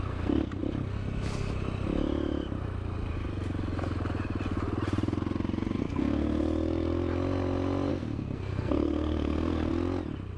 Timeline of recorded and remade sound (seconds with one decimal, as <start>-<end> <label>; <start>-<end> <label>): 0.0-0.6 remade; 0.6-5.8 recorded; 5.8-6.4 remade; 6.4-7.9 recorded; 7.9-9.7 remade; 9.7-10.4 recorded